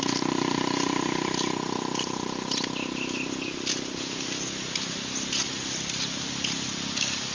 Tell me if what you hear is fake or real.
real